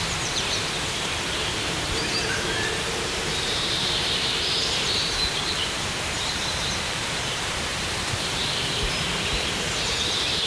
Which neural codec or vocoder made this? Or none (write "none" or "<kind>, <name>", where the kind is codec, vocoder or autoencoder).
vocoder, BigVGAN v2